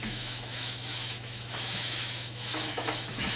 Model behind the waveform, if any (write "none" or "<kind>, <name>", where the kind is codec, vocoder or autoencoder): autoencoder, DAC-VAE